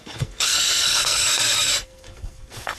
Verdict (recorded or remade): remade